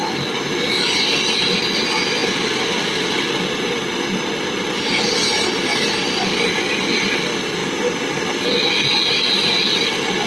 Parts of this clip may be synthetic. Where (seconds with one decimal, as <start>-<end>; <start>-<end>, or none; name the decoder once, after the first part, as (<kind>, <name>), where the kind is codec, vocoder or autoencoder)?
none